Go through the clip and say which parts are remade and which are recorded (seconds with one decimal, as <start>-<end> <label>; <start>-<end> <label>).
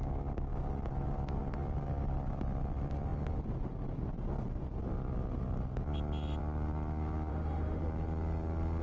0.0-7.3 recorded; 7.3-7.8 remade; 7.8-8.8 recorded